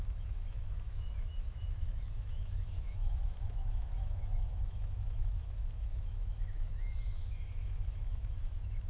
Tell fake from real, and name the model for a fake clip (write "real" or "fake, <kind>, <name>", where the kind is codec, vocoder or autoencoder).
fake, autoencoder, DAC-VAE